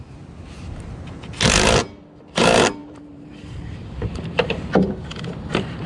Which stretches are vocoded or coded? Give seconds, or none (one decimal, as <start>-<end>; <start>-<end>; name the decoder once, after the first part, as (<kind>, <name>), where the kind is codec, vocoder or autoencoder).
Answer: 2.8-4.7 (vocoder, BigVGAN v2)